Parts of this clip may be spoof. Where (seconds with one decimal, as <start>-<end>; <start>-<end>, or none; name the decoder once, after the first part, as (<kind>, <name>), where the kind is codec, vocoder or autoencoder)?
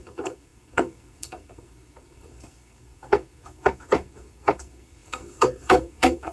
0.0-6.3 (codec, SNAC)